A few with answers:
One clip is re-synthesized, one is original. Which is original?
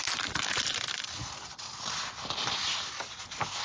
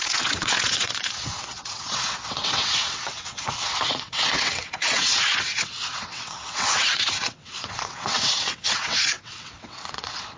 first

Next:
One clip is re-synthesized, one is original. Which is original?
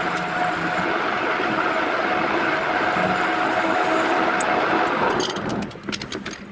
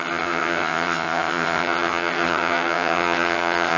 first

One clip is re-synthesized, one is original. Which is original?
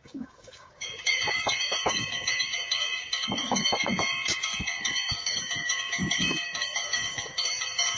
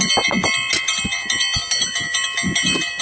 second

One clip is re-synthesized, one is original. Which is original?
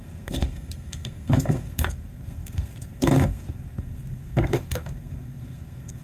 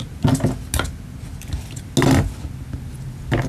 second